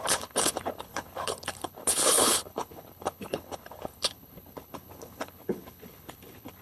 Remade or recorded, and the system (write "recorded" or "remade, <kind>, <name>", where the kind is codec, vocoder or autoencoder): remade, codec, HILCodec